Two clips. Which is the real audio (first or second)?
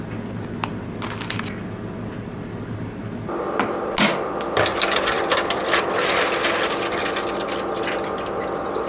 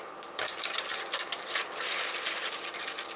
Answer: first